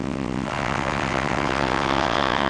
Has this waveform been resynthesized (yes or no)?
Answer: yes